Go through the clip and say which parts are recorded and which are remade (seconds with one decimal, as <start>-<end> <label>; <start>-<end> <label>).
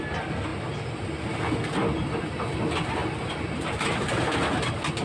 0.0-5.0 recorded